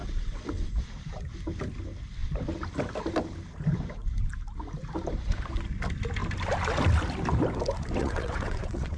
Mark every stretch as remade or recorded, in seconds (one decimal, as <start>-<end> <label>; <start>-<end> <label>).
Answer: 0.0-0.7 remade; 0.7-8.0 recorded; 8.0-9.0 remade